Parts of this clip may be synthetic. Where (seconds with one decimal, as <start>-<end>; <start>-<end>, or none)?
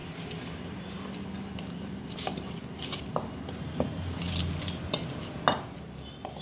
none